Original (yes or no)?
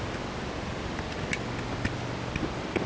yes